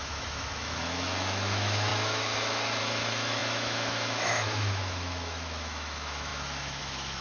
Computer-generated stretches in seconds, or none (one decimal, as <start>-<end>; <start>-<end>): 0.0-7.2